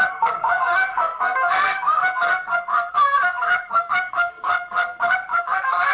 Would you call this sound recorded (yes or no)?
no